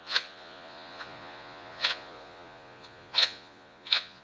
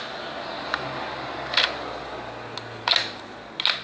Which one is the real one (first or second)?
second